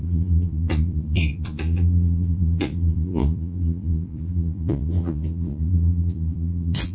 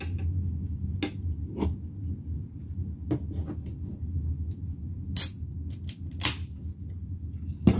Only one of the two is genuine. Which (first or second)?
second